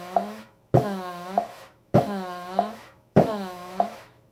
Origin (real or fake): fake